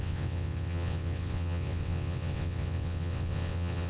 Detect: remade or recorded remade